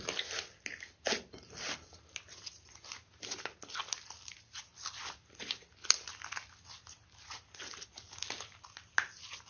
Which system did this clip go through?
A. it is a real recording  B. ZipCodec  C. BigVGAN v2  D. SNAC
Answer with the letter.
A